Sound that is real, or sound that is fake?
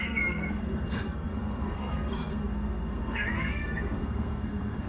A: fake